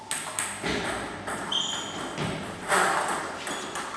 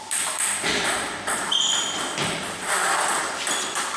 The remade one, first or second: second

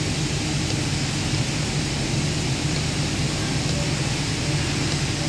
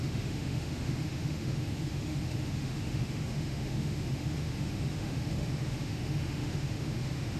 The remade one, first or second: second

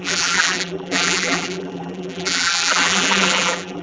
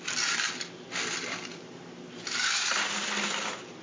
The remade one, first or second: first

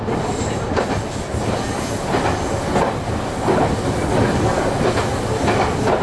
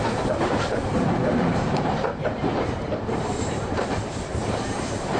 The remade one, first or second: second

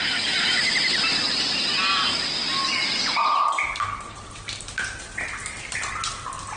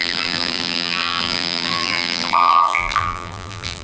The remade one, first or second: second